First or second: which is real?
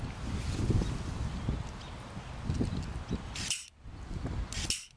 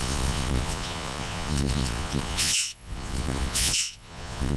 first